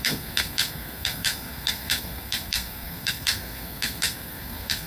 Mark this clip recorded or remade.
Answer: remade